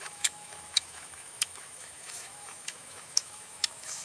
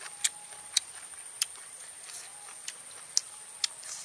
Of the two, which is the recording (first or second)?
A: second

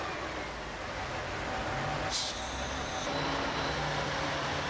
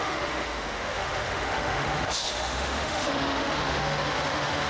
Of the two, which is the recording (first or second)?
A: first